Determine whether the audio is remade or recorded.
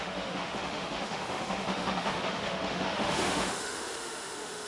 remade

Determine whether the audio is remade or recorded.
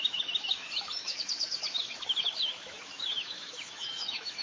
remade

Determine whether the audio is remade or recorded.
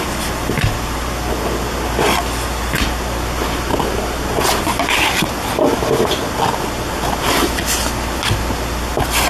recorded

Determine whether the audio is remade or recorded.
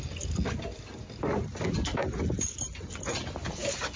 recorded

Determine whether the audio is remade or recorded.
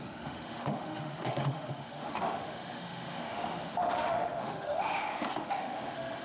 remade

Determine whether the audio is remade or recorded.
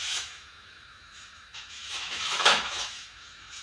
remade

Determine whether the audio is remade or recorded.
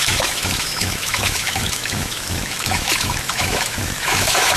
remade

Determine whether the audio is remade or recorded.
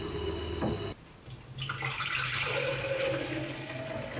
recorded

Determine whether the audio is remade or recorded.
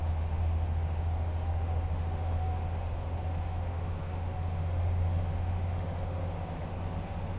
remade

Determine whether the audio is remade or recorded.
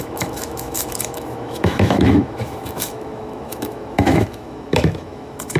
remade